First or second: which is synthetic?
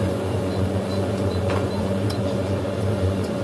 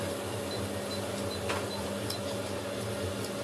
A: first